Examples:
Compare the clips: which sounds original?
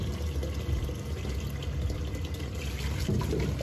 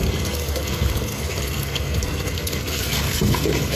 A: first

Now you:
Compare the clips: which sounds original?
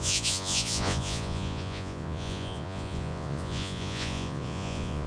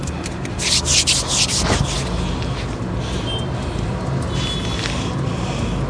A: second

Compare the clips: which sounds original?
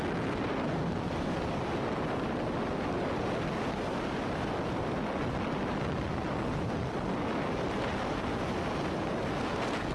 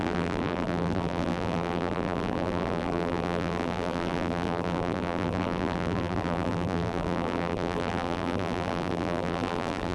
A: first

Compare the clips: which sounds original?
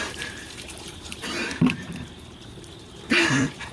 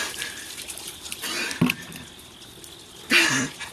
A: second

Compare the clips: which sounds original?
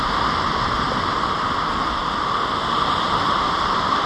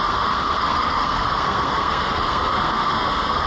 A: first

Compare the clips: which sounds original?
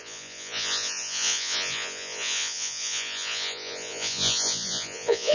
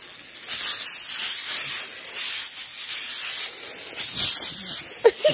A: second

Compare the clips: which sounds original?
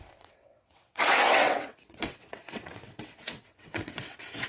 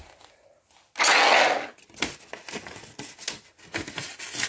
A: second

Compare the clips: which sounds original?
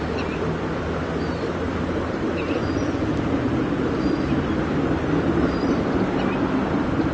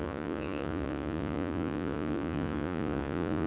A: first